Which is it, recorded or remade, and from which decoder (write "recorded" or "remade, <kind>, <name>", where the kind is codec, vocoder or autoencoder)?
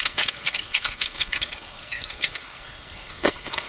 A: remade, codec, SNAC